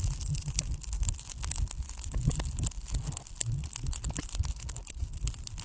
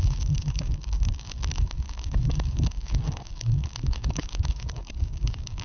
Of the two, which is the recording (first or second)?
first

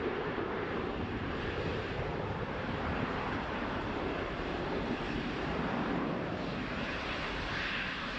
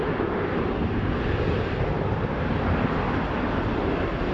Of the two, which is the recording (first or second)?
second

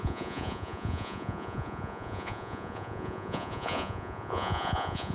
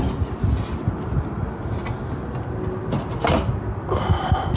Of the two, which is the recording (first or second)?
second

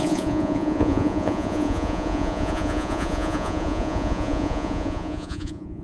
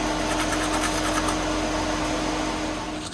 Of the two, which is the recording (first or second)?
second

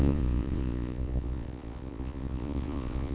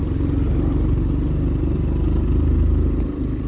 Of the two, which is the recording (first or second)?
second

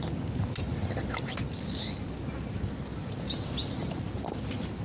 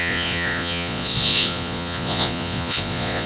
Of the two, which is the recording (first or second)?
first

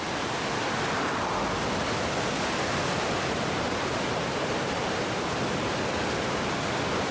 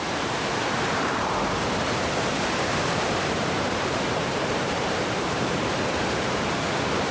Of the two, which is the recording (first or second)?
first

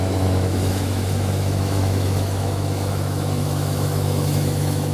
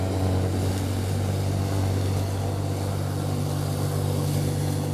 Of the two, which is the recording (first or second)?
second